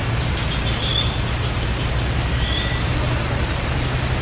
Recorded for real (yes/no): no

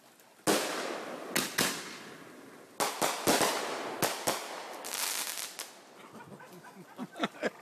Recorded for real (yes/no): yes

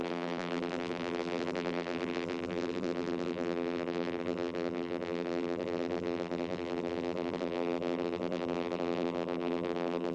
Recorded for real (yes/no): no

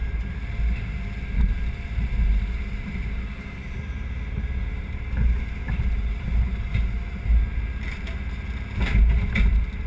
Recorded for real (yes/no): no